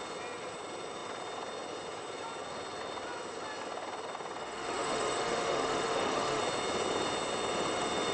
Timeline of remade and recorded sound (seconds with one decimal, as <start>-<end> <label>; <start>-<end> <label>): 0.0-4.4 recorded; 4.4-6.4 remade; 6.4-8.1 recorded